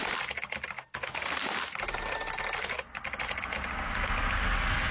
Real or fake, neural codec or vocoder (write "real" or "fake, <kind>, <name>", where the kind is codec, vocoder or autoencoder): real